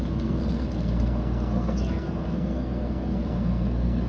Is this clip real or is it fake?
fake